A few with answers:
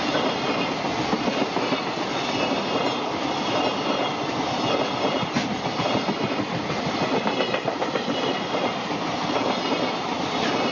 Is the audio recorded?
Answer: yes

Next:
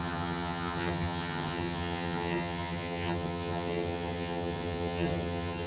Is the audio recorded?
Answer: no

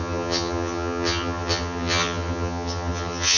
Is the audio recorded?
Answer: no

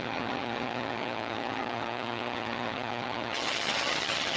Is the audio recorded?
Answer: no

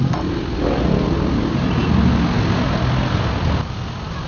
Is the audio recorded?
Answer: yes